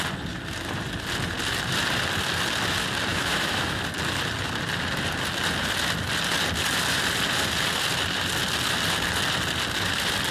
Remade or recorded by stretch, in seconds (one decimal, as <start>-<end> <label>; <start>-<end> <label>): 0.0-3.1 recorded; 3.1-3.8 remade; 3.8-10.3 recorded